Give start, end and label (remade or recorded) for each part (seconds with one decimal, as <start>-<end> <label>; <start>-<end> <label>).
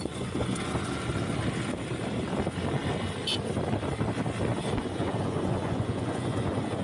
0.0-1.1 remade; 1.1-4.8 recorded; 4.8-6.8 remade